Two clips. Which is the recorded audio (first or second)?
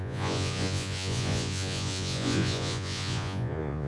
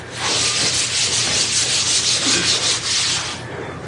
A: second